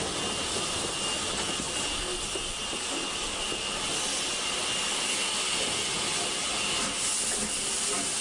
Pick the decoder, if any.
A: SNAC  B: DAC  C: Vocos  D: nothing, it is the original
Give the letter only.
D